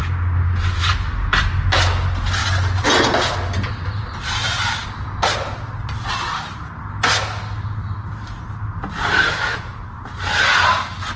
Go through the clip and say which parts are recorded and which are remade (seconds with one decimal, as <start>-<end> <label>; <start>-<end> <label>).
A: 0.0-11.2 recorded